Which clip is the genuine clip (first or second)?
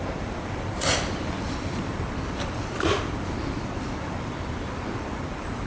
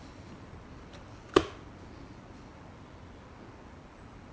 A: second